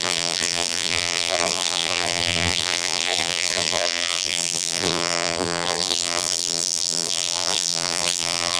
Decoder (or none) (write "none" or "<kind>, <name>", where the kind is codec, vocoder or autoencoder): vocoder, BigVGAN v2